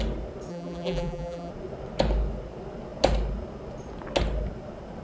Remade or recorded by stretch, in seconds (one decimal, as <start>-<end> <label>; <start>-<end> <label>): 0.0-0.5 recorded; 0.5-1.5 remade; 1.5-5.0 recorded